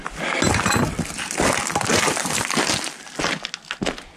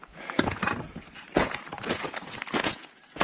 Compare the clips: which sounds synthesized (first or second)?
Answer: second